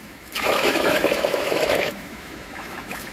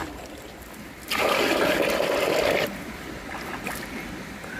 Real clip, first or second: second